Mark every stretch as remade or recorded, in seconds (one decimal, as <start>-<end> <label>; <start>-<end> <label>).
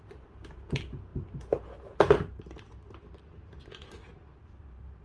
0.0-5.0 recorded